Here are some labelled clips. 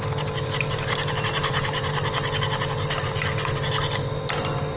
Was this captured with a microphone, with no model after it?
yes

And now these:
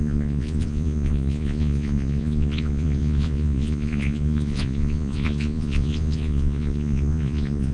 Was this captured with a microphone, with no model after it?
no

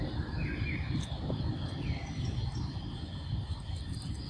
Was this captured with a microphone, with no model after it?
yes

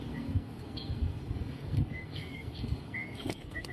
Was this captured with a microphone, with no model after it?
no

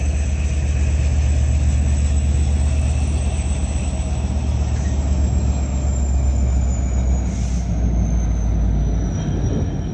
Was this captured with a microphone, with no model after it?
yes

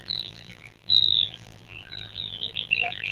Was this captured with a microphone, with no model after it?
no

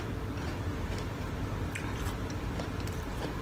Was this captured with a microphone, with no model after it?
yes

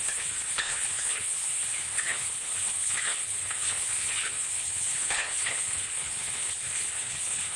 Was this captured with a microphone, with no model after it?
no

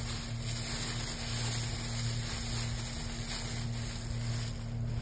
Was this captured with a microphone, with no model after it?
yes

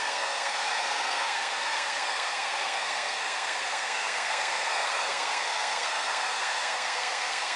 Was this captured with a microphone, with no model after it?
no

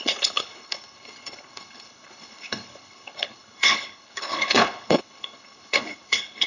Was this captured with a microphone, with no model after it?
no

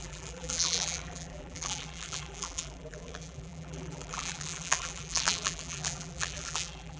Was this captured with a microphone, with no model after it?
no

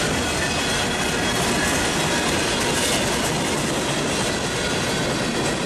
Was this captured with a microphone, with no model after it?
yes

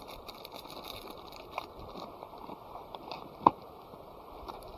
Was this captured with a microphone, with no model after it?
yes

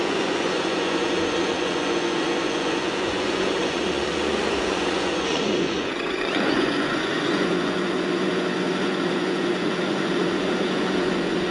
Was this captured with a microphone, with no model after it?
no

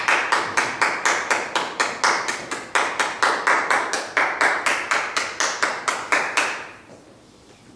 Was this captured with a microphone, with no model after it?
yes